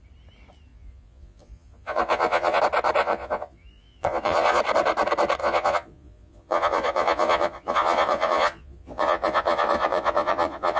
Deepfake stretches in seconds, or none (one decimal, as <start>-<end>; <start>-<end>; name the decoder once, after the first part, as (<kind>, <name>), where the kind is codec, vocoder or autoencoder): 0.7-2.6 (vocoder, Vocos); 3.0-4.6; 5.4-10.8